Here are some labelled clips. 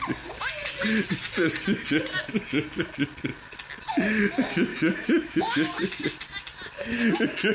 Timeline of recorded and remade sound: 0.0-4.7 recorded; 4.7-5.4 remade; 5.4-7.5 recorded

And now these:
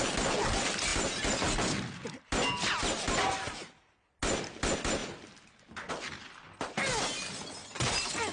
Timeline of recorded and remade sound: 0.0-8.3 recorded

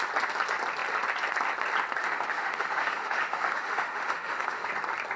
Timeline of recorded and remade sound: 0.0-2.0 recorded; 2.0-4.7 remade; 4.7-5.2 recorded

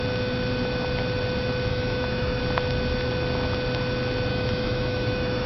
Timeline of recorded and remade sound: 0.0-1.7 recorded; 1.7-2.4 remade; 2.4-4.3 recorded; 4.3-5.5 remade

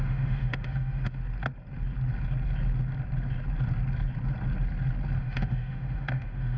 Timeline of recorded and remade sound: 0.0-1.2 remade; 1.2-5.2 recorded; 5.2-6.6 remade